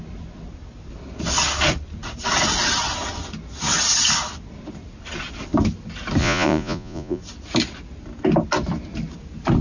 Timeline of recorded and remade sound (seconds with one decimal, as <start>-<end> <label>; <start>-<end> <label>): 0.0-6.2 recorded; 6.2-7.2 remade; 7.2-9.6 recorded